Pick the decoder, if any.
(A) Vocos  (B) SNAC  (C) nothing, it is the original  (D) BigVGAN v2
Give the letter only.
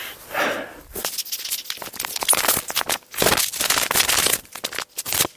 C